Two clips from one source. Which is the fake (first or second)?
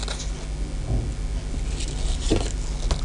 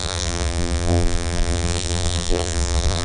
second